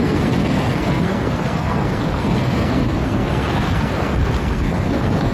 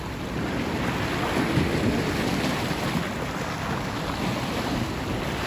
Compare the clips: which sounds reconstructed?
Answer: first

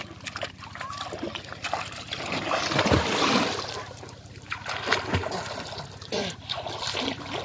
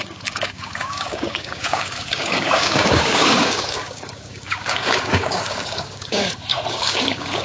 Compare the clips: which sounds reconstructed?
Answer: second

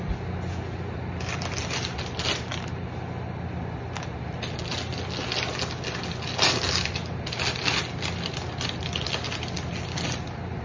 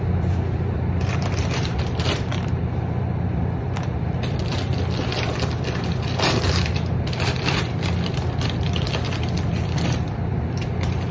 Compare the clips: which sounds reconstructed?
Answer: second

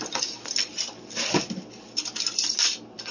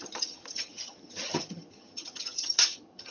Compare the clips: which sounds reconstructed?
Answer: second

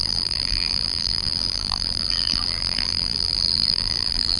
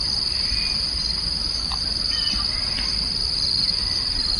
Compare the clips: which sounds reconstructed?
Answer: first